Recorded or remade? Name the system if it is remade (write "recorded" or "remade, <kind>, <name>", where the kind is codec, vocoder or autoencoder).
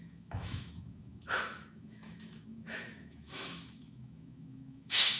remade, autoencoder, DAC-VAE